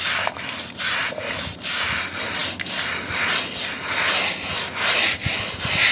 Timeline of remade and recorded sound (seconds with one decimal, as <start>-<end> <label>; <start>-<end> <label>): 0.0-5.9 recorded